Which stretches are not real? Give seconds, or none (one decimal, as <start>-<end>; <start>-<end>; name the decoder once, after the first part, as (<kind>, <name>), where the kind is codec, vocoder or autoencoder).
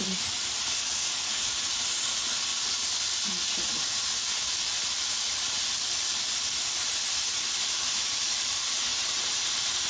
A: 8.9-9.9 (vocoder, BigVGAN v2)